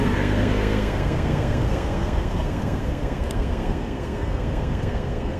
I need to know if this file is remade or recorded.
remade